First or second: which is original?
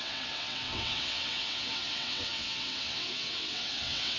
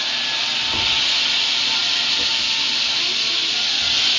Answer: second